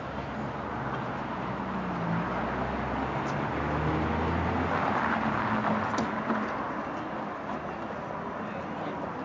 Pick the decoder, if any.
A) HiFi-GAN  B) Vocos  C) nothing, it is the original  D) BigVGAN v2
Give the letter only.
C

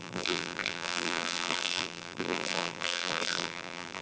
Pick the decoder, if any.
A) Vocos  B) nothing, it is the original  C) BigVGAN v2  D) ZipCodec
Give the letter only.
C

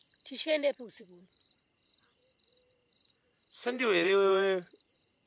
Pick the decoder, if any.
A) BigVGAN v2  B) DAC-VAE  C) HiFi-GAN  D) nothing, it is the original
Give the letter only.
A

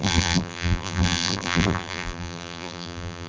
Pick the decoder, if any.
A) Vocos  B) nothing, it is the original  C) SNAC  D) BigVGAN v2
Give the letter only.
D